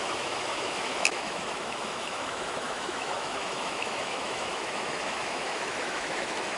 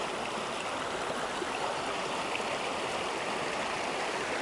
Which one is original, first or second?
second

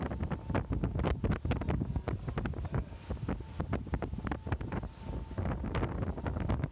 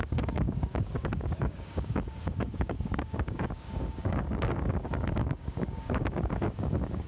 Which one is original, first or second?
first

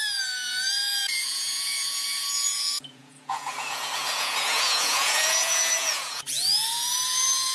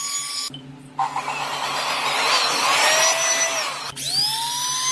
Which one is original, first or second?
second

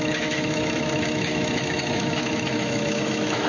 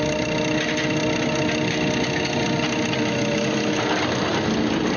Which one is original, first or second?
second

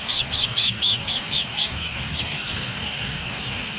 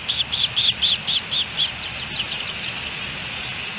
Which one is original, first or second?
second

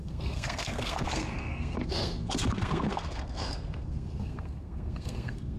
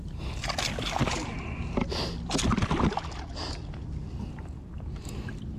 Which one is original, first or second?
second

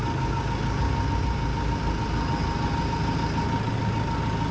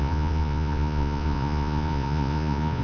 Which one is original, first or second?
first